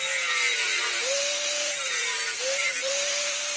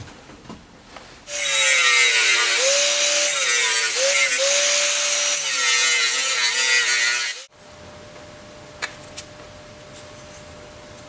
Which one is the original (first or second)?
second